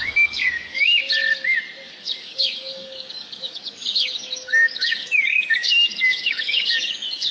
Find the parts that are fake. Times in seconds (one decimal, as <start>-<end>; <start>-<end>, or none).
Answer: 0.0-1.0; 2.0-7.3